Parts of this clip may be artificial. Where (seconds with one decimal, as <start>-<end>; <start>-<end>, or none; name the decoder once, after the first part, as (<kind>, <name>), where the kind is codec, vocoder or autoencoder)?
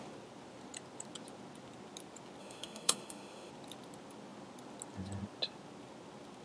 2.4-3.5 (autoencoder, DAC-VAE)